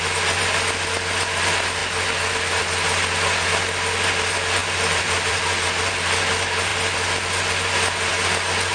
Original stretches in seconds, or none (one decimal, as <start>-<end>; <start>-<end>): 0.0-4.6; 5.4-8.7